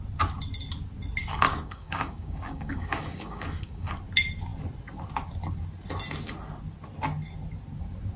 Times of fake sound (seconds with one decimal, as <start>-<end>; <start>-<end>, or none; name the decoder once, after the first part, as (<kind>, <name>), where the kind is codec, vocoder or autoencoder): 1.2-3.9 (codec, DAC)